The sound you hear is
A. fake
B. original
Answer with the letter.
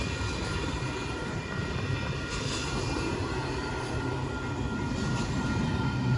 A